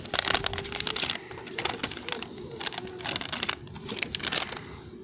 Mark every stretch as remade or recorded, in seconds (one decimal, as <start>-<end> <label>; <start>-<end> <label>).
0.0-5.0 recorded